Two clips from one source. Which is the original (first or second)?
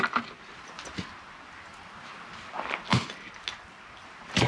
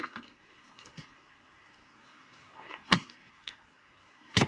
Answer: first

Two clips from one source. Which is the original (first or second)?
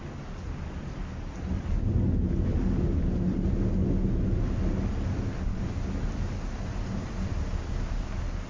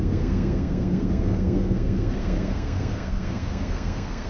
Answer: first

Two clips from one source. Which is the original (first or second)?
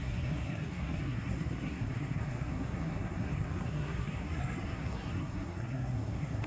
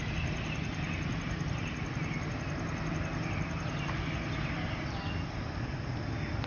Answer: second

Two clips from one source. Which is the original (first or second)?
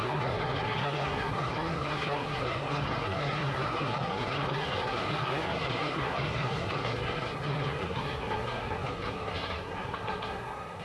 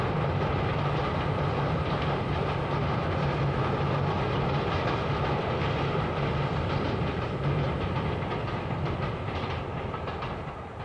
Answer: second